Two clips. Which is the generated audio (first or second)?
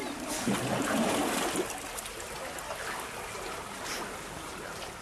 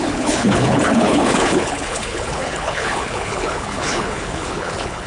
second